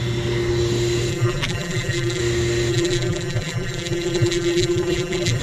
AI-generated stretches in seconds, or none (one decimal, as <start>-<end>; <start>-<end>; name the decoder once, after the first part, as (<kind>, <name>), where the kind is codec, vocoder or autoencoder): 1.1-2.2 (vocoder, BigVGAN v2); 2.7-5.4